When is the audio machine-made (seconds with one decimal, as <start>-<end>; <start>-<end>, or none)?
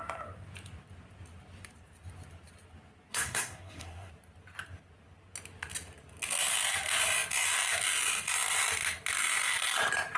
3.1-4.1